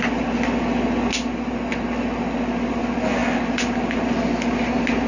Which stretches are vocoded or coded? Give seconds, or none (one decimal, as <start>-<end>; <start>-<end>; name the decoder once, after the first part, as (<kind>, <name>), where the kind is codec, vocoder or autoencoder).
none